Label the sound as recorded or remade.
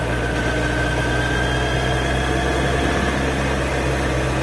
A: recorded